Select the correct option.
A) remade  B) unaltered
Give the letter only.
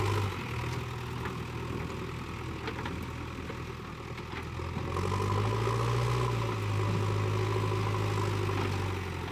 B